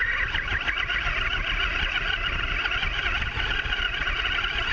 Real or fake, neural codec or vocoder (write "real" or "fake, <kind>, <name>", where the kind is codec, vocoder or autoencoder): real